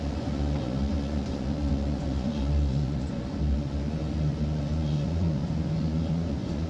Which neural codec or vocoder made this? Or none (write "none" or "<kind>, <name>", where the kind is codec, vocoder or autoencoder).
vocoder, Vocos